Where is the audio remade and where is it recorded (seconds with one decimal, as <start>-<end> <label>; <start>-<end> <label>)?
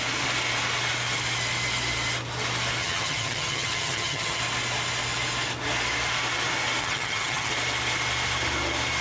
0.0-2.8 recorded; 2.8-4.4 remade; 4.4-6.8 recorded; 6.8-7.5 remade; 7.5-9.0 recorded